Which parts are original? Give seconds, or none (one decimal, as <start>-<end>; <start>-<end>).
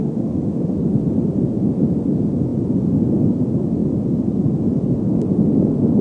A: 0.8-6.0